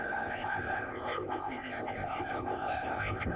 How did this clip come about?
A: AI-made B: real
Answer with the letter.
A